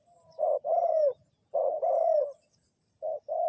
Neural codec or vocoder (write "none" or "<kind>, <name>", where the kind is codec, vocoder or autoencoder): vocoder, BigVGAN v2